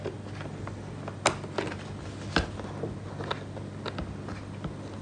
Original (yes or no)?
yes